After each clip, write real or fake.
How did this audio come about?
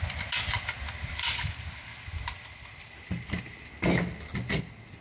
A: real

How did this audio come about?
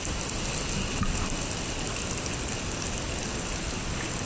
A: real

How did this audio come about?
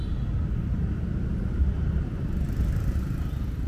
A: real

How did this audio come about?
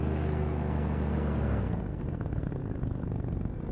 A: fake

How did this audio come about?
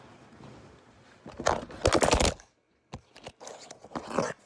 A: real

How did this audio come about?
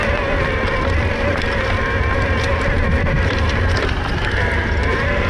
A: real